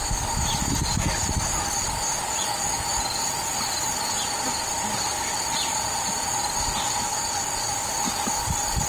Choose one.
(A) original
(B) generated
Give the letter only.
A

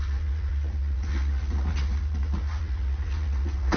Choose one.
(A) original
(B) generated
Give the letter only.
B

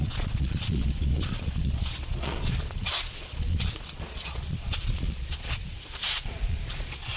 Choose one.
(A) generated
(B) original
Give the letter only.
A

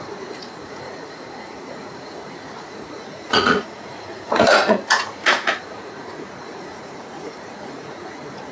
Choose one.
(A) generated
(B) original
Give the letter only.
A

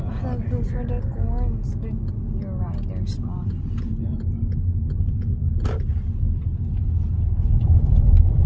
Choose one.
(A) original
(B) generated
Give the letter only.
A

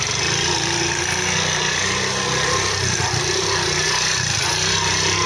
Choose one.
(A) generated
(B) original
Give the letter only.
B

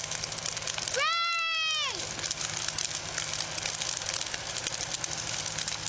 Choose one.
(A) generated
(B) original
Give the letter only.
B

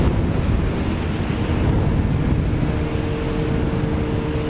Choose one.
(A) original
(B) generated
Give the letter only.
A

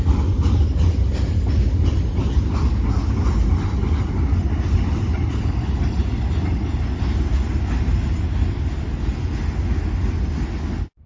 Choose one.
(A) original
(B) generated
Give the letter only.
A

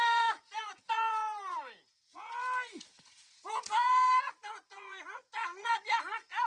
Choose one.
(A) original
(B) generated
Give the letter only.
B